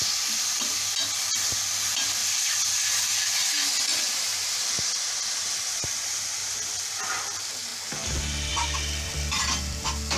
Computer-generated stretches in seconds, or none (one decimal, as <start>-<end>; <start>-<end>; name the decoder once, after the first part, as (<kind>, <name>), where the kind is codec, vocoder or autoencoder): 0.0-3.4 (vocoder, BigVGAN v2); 5.9-6.4; 7.0-7.7; 8.5-10.2